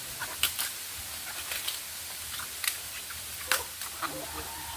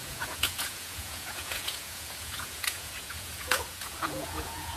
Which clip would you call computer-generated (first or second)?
second